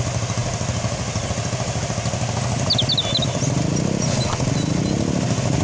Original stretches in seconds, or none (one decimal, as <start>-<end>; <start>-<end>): 0.0-5.6